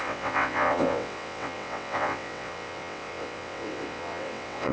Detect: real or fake fake